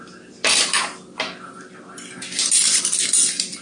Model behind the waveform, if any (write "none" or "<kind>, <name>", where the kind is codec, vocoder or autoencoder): none